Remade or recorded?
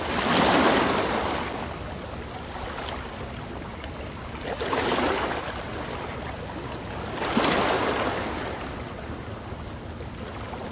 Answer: recorded